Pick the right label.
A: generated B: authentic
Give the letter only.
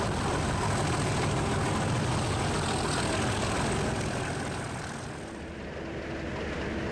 B